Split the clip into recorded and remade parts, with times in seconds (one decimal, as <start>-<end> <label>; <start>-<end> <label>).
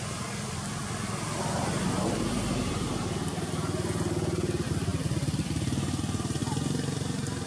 0.0-7.5 recorded